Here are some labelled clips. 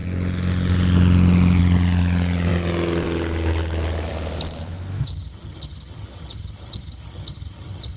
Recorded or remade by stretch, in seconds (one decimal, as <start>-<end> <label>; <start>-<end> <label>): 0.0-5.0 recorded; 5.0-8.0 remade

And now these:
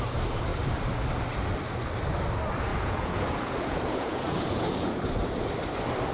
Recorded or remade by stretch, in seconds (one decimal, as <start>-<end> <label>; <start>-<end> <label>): 0.0-2.7 recorded; 2.7-5.0 remade; 5.0-6.1 recorded

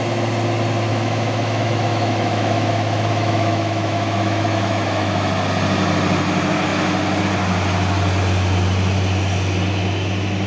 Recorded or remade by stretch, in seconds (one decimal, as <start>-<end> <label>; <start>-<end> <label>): 0.0-0.9 recorded; 0.9-5.3 remade; 5.3-10.5 recorded

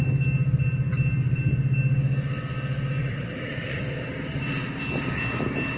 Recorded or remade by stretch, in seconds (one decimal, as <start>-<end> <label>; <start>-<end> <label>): 0.0-3.0 recorded; 3.0-3.8 remade; 3.8-5.8 recorded

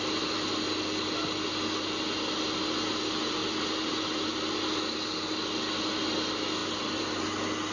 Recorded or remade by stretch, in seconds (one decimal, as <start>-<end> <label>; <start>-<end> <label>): 0.0-3.4 recorded; 3.4-4.4 remade; 4.4-6.6 recorded; 6.6-7.2 remade; 7.2-7.7 recorded

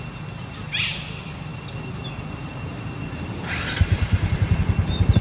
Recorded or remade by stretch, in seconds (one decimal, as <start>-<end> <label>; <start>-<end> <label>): 0.0-1.5 recorded; 1.5-4.6 remade; 4.6-5.2 recorded